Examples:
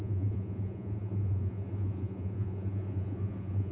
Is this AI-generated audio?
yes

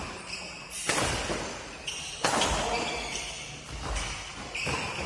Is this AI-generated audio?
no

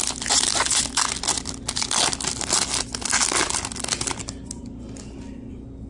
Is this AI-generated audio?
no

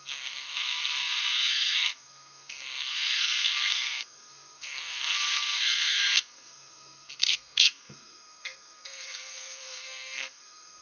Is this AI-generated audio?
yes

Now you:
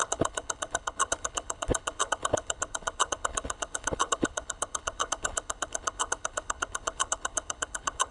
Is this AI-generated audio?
yes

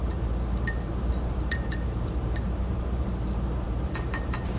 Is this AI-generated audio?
yes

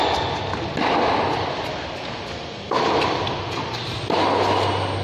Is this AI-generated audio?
no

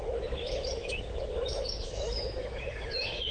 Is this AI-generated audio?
yes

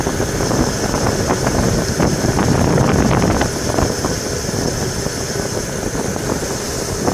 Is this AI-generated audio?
yes